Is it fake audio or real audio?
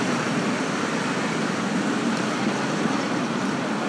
real